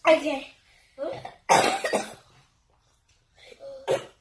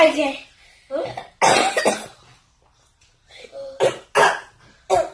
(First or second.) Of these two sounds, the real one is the second